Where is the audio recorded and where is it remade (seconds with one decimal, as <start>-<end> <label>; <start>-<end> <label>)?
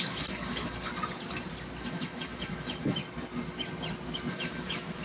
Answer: 0.0-0.9 remade; 0.9-1.8 recorded; 1.8-3.0 remade; 3.0-4.3 recorded; 4.3-5.0 remade